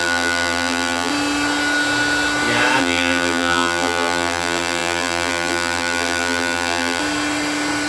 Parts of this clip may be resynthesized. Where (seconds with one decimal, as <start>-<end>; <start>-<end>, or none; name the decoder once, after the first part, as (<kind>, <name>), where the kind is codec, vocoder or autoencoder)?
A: 0.0-1.1 (vocoder, BigVGAN v2); 2.8-7.0